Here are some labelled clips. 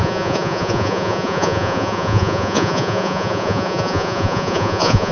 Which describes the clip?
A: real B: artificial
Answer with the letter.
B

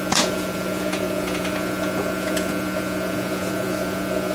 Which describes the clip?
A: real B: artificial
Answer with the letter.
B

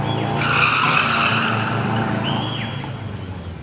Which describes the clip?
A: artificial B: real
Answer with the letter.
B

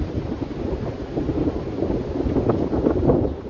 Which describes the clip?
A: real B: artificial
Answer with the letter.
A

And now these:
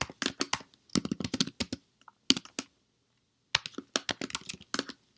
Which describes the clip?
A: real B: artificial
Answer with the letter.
A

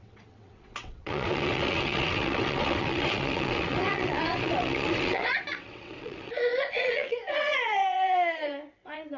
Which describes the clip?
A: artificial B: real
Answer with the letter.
A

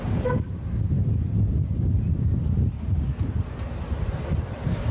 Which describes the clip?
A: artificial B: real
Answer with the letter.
B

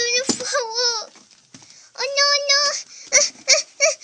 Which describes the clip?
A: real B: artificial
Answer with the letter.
A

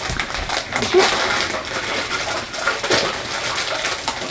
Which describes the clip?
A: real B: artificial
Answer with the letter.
A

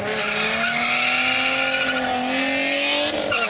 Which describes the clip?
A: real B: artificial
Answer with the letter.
A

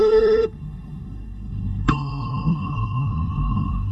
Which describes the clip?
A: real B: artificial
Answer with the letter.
B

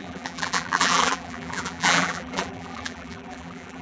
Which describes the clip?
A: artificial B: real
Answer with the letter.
A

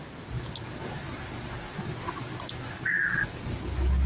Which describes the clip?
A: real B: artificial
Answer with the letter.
A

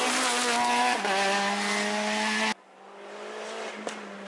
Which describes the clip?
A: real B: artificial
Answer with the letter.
A